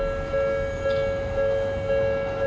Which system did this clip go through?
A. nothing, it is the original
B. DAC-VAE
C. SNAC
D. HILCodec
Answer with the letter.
A